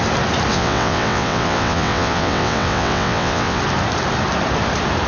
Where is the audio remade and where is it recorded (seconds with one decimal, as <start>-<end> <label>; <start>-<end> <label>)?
0.0-0.5 recorded; 0.5-3.6 remade; 3.6-5.1 recorded